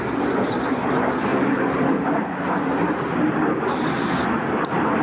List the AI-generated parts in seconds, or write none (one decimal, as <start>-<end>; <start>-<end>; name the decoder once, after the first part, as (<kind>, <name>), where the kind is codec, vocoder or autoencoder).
1.3-2.0 (vocoder, BigVGAN v2)